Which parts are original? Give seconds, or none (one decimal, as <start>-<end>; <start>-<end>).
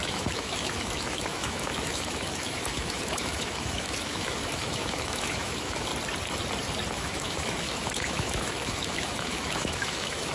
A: 5.9-6.9